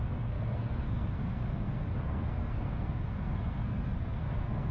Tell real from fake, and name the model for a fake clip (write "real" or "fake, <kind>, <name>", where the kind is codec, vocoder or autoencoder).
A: fake, codec, SNAC